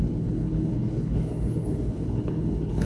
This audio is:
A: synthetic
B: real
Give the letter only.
A